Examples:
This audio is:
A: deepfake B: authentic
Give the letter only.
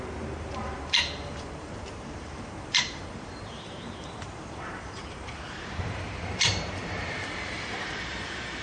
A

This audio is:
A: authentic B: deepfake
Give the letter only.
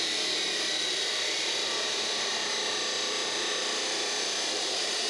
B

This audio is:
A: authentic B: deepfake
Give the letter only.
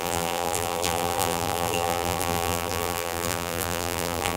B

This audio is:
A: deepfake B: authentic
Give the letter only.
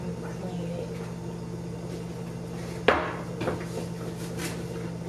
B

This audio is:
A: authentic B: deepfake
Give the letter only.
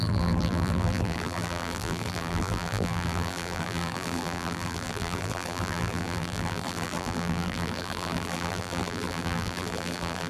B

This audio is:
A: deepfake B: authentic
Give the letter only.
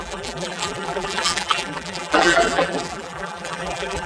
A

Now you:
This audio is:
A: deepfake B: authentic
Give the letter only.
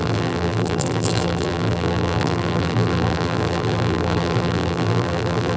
A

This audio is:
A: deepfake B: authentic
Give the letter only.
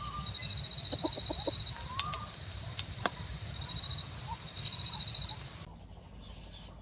B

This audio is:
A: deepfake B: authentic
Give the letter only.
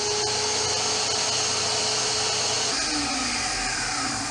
B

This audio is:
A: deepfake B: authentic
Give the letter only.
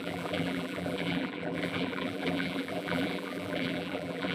A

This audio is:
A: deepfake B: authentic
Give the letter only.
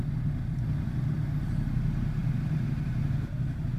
B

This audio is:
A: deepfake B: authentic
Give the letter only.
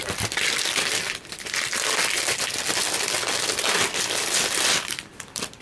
A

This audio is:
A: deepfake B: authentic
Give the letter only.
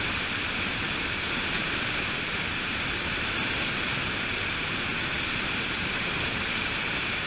A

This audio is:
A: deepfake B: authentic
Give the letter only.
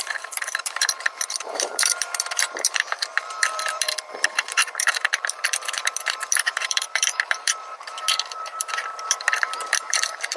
A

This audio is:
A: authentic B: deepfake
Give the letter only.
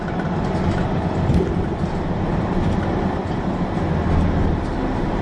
B